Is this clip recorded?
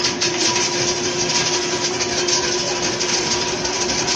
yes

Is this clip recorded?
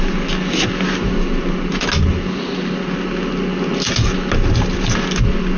yes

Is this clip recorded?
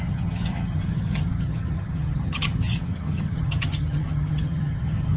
no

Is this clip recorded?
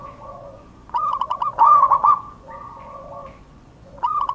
no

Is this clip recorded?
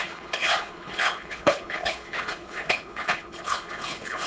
no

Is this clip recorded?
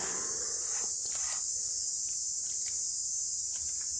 yes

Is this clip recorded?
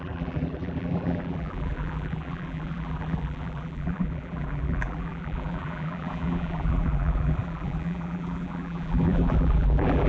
no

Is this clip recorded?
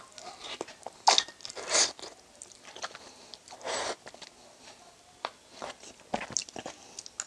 yes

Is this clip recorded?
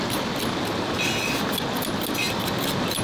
yes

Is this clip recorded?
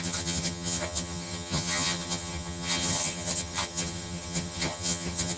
no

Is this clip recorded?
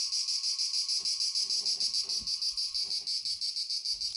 yes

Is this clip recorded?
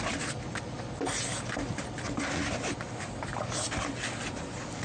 yes